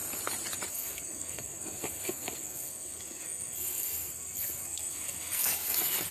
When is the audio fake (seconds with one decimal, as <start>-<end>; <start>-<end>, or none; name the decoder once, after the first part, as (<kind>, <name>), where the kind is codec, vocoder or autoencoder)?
0.7-6.1 (codec, SNAC)